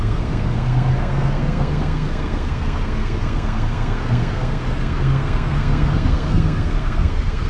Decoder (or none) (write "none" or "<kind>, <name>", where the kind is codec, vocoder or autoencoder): codec, SNAC